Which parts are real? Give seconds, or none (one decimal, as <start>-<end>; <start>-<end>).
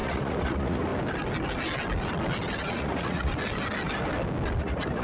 0.9-2.6; 3.3-4.6